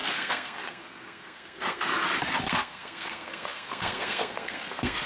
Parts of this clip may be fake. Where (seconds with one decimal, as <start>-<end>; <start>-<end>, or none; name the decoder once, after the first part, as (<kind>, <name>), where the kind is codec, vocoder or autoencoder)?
0.0-1.9 (codec, SNAC); 2.4-5.1